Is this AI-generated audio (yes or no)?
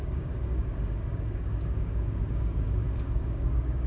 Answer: yes